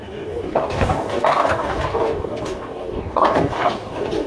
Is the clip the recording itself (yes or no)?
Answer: no